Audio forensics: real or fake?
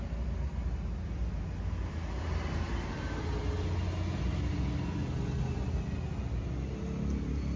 real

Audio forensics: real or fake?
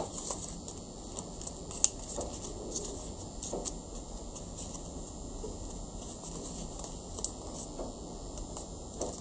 real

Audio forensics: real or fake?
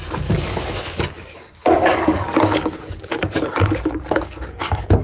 fake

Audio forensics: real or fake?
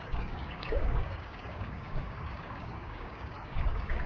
fake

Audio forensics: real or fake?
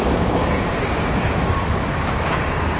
fake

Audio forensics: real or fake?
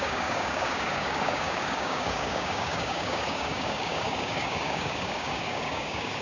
fake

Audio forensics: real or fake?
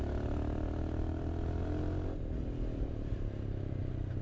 real